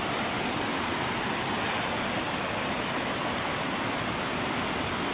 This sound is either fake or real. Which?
real